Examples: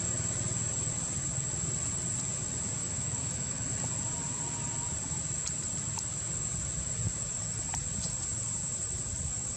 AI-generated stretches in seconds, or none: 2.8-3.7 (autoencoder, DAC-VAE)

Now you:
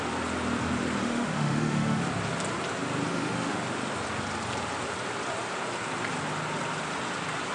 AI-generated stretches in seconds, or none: 1.0-2.0 (autoencoder, DAC-VAE); 3.1-3.6

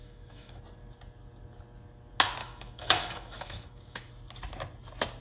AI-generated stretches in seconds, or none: 0.0-0.6 (autoencoder, DAC-VAE); 2.4-4.1

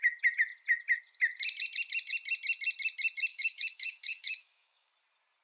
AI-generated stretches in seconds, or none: 3.3-4.9 (autoencoder, DAC-VAE)

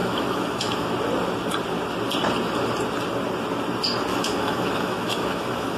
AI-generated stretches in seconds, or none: 0.0-0.9 (autoencoder, DAC-VAE); 4.1-5.8